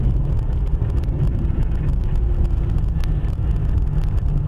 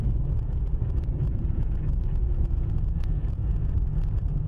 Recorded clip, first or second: first